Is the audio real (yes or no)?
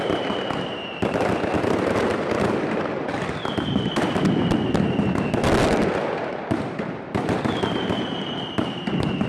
no